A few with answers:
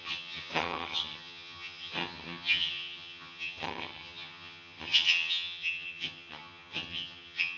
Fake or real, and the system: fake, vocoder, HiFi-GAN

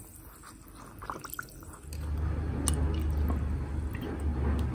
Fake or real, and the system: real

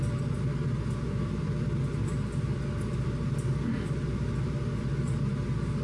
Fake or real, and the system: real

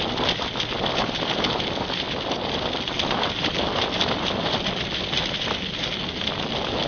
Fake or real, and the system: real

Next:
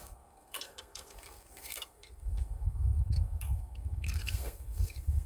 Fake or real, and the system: fake, codec, SNAC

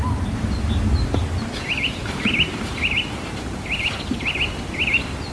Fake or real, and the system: real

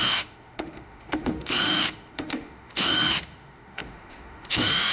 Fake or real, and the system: fake, autoencoder, DAC-VAE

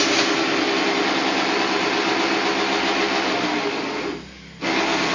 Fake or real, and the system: real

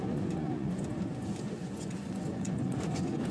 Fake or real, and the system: fake, vocoder, Vocos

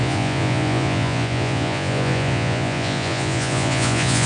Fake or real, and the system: fake, vocoder, Vocos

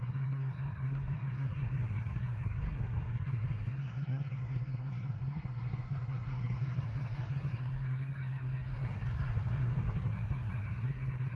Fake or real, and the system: fake, codec, SNAC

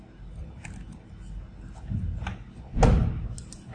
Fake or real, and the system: real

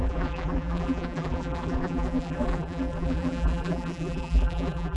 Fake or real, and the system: fake, vocoder, BigVGAN v2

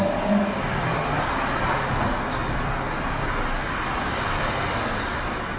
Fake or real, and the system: real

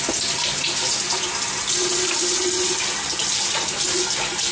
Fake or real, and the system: real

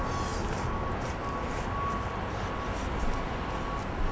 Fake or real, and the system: real